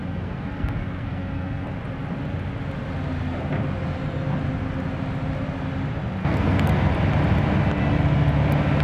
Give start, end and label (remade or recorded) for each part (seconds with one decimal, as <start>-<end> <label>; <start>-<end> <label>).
0.0-1.7 remade; 1.7-6.2 recorded; 6.2-6.9 remade; 6.9-8.8 recorded